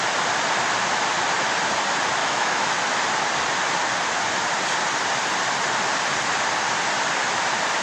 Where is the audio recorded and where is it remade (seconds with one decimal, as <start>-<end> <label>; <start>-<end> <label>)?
0.0-2.2 recorded; 2.2-2.7 remade; 2.7-7.8 recorded